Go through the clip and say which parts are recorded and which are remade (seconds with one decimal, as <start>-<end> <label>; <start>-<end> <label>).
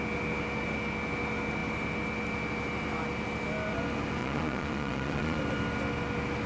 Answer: 0.0-4.2 recorded; 4.2-5.4 remade; 5.4-6.5 recorded